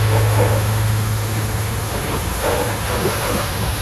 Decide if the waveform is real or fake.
fake